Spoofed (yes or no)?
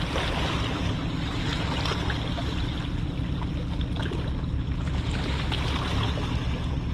no